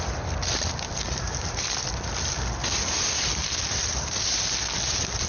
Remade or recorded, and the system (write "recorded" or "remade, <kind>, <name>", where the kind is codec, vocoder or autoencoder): remade, vocoder, BigVGAN v2